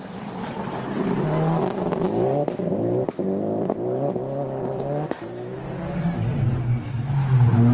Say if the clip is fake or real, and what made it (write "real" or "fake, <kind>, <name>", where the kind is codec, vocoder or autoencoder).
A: real